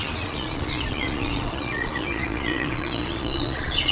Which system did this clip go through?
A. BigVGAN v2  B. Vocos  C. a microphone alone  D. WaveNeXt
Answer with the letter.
B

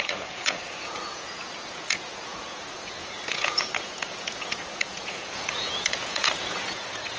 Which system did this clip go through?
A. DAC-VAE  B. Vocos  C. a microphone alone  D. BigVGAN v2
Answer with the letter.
B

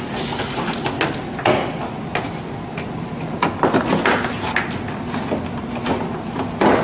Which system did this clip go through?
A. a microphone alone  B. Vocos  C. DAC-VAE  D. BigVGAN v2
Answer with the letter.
A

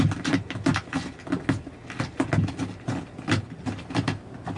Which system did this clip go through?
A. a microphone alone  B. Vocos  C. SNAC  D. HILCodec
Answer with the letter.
A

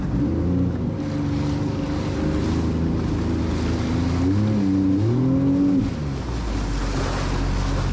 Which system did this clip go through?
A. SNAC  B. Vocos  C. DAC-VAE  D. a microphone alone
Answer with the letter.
D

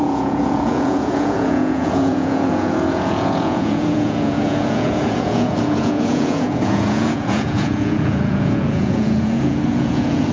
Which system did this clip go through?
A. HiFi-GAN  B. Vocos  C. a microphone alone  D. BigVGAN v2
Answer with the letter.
B